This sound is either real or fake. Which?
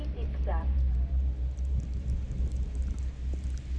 real